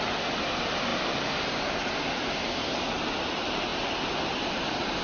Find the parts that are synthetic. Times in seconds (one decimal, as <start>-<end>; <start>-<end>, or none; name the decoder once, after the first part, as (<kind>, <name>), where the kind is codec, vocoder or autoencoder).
none